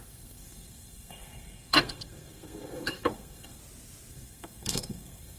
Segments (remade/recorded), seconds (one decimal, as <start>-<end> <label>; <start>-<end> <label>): 0.0-3.6 remade; 3.6-4.1 recorded; 4.1-5.4 remade